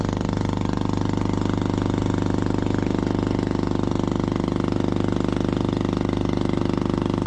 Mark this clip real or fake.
real